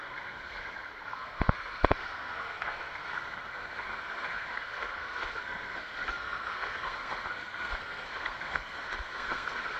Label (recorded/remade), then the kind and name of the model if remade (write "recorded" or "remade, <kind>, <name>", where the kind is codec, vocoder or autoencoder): remade, codec, SNAC